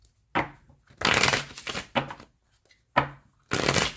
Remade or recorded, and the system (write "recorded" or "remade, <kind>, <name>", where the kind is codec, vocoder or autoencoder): recorded